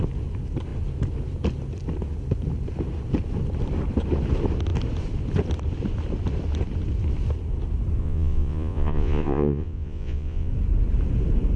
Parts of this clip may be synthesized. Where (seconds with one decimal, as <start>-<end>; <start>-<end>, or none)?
8.0-10.5